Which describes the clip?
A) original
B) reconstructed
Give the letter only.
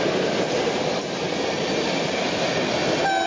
A